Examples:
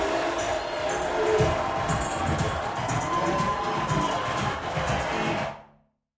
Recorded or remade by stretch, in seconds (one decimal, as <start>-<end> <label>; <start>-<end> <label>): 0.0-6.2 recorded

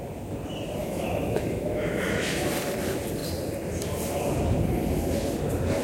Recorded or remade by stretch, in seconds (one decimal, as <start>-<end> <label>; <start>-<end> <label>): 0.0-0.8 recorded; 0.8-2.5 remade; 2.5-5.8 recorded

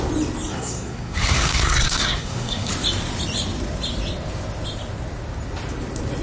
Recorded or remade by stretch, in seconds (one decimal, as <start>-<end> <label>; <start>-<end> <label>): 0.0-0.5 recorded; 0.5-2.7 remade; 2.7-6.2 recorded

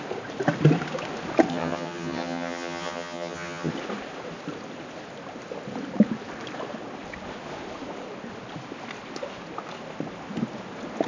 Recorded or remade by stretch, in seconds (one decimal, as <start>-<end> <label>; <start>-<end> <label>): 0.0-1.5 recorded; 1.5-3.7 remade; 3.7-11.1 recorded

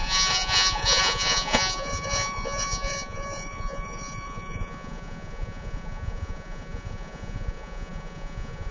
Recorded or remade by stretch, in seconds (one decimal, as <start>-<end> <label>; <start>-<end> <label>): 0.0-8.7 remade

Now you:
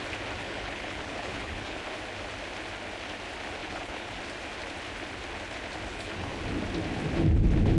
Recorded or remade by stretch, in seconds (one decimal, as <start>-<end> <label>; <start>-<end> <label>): 0.0-0.4 recorded; 0.4-1.8 remade; 1.8-3.6 recorded; 3.6-4.2 remade; 4.2-5.9 recorded; 5.9-6.4 remade; 6.4-7.8 recorded